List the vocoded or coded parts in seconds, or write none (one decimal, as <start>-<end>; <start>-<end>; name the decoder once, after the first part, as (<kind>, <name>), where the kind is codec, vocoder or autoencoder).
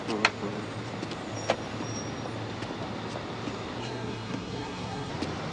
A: 3.8-5.1 (codec, SNAC)